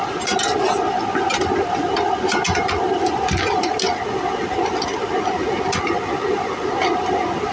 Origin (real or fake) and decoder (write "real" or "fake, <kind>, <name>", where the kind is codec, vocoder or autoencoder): real